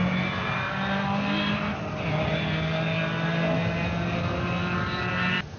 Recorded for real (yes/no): yes